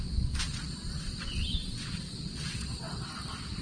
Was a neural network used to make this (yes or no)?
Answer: yes